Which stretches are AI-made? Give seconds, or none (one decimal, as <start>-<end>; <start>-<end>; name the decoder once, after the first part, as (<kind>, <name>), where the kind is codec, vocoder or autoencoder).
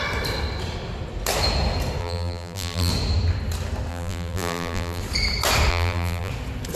2.0-2.9 (vocoder, BigVGAN v2); 3.9-5.0; 5.7-6.3